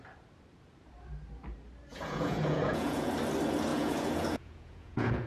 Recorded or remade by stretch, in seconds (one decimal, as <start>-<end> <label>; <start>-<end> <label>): 0.0-1.9 recorded; 1.9-3.1 remade; 3.1-3.7 recorded; 3.7-5.3 remade